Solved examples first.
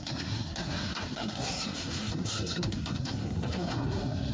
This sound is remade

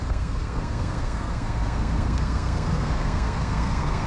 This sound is remade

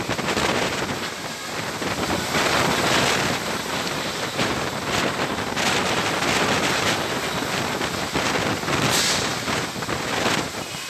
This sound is recorded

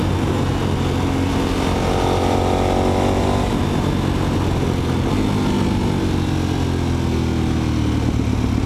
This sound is recorded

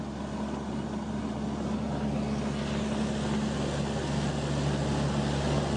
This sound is recorded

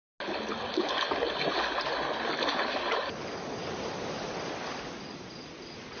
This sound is recorded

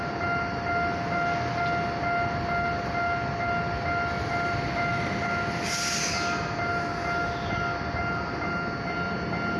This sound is recorded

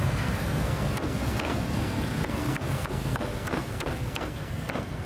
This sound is remade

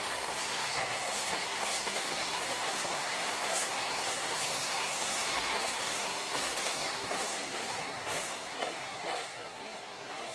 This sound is remade